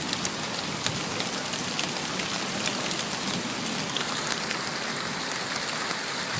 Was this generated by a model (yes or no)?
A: no